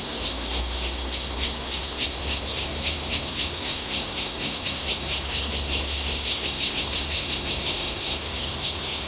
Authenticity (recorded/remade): remade